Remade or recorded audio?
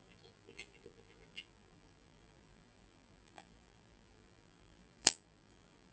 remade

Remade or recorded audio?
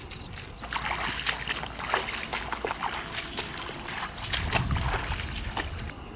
recorded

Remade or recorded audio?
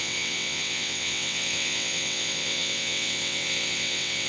remade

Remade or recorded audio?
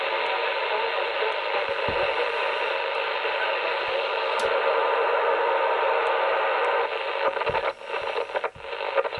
recorded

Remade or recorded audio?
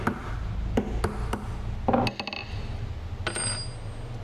recorded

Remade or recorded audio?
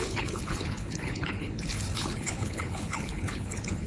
remade